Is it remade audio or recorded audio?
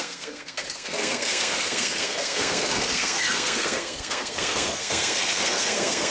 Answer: remade